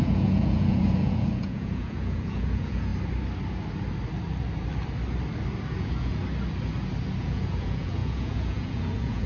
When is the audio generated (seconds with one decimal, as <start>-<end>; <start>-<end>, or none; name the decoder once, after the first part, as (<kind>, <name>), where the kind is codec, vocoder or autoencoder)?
0.0-2.9 (vocoder, Vocos); 5.8-6.2; 7.2-9.3